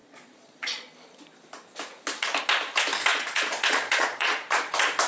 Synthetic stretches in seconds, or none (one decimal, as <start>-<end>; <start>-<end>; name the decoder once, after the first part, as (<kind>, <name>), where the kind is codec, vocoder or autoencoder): 0.0-0.9 (vocoder, Vocos); 3.1-4.6